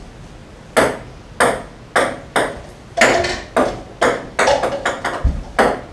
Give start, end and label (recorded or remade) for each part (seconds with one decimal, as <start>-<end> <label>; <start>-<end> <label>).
0.0-5.9 recorded